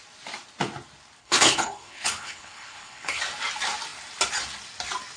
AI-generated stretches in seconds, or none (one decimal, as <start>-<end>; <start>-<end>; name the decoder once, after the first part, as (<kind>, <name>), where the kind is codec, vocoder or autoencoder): 1.2-3.2 (codec, HILCodec)